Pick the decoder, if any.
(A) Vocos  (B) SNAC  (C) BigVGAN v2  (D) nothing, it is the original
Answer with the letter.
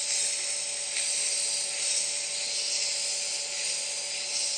D